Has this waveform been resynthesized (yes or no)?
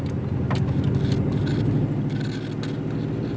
no